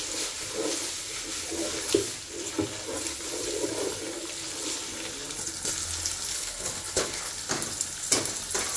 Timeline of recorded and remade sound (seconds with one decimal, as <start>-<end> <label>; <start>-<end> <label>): 0.0-6.3 recorded; 6.3-7.3 remade; 7.3-8.8 recorded

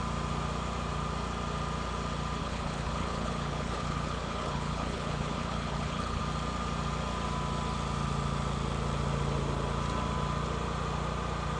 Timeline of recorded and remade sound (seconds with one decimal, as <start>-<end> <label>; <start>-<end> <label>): 0.0-2.4 recorded; 2.4-6.2 remade; 6.2-11.6 recorded

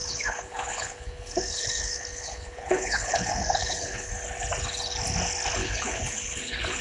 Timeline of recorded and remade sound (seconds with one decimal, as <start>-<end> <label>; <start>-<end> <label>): 0.0-4.1 remade; 4.1-5.6 recorded; 5.6-6.8 remade